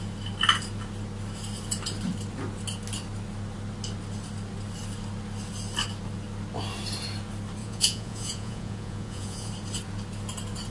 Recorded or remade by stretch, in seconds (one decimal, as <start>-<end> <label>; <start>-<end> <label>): 0.0-7.6 recorded; 7.6-9.5 remade; 9.5-10.7 recorded